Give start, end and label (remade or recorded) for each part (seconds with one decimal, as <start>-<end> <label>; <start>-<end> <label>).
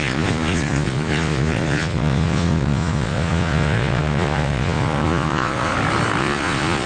0.0-5.7 remade; 5.7-6.2 recorded; 6.2-6.9 remade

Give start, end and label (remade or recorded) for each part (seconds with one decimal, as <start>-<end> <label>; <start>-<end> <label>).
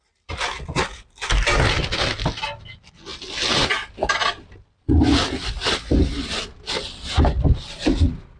0.0-8.4 recorded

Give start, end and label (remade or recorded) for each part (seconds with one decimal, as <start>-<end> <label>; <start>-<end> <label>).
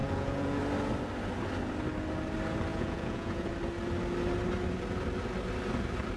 0.0-0.6 remade; 0.6-2.7 recorded; 2.7-3.5 remade; 3.5-6.2 recorded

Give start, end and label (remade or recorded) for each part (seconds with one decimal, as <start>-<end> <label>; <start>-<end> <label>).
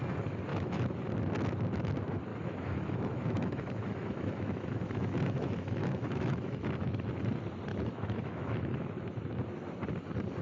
0.0-0.5 recorded; 0.5-1.1 remade; 1.1-2.3 recorded; 2.3-7.1 remade; 7.1-7.7 recorded; 7.7-9.3 remade; 9.3-10.4 recorded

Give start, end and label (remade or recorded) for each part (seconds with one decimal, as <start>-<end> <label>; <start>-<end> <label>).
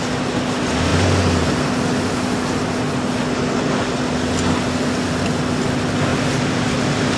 0.0-7.2 recorded